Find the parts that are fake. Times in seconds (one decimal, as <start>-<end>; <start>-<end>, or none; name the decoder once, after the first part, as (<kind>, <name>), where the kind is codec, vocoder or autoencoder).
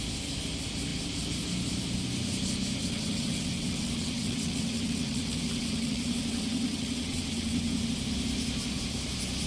2.8-7.9 (vocoder, WaveNeXt)